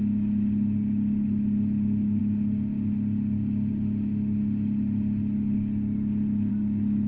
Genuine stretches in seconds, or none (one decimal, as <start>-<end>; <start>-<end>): 0.0-7.1